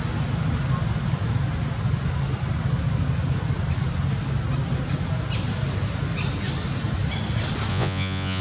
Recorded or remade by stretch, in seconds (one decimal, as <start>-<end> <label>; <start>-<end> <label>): 0.0-7.7 recorded; 7.7-8.4 remade